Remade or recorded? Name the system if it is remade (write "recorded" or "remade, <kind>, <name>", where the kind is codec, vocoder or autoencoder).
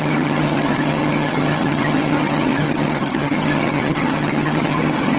remade, vocoder, HiFi-GAN